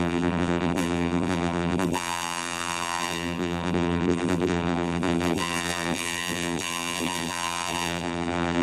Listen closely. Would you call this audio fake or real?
fake